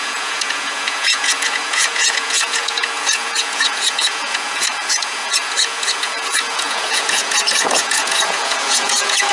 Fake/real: fake